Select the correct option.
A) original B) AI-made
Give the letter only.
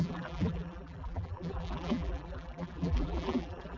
B